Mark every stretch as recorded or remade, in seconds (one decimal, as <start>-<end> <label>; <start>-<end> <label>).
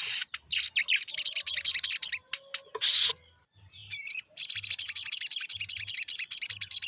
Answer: 0.0-6.9 recorded